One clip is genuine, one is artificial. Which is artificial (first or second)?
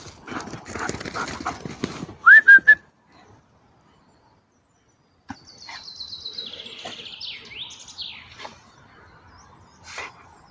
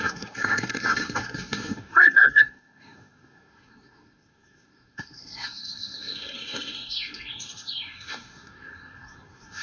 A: second